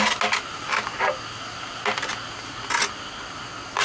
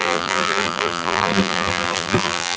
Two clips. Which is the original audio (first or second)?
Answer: first